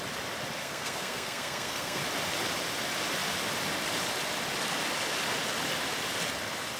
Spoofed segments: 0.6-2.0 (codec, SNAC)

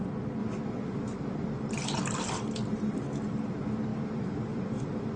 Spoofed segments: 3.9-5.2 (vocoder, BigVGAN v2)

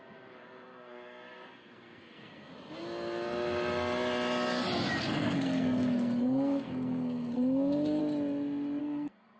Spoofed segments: 0.0-2.5 (codec, SNAC); 5.0-8.0; 8.8-9.4